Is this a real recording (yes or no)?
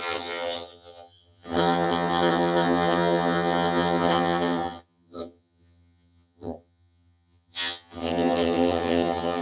no